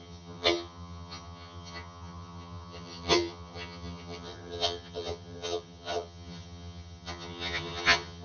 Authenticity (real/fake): fake